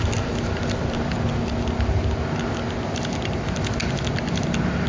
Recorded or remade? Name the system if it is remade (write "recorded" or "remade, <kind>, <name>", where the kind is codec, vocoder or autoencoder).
recorded